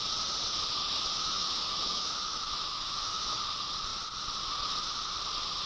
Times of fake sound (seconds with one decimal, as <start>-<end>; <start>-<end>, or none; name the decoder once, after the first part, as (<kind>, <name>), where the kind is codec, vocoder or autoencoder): 1.1-3.4 (autoencoder, DAC-VAE)